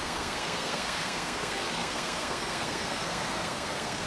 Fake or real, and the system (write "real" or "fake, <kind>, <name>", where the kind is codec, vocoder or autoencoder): fake, codec, SNAC